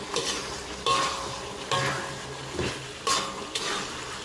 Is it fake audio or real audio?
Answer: real